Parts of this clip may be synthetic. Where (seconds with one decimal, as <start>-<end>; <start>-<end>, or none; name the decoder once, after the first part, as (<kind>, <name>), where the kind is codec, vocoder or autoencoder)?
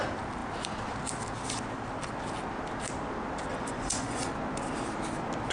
3.5-4.3 (vocoder, Vocos)